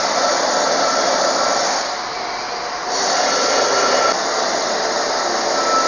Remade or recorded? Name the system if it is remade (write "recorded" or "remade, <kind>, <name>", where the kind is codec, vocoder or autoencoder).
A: recorded